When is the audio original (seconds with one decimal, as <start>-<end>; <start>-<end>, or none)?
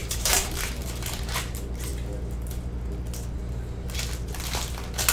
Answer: 0.7-5.1